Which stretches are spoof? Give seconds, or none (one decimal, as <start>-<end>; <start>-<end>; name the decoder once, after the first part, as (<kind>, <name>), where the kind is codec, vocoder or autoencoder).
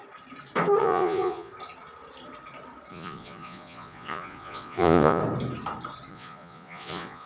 0.8-1.5 (vocoder, Vocos); 2.9-5.2; 6.1-7.3